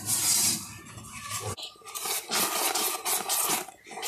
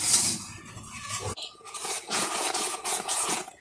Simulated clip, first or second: second